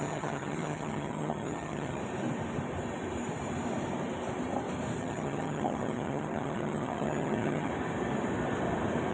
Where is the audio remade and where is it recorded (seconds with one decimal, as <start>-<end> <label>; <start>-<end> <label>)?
0.0-2.0 remade; 2.0-5.0 recorded; 5.0-7.7 remade; 7.7-9.1 recorded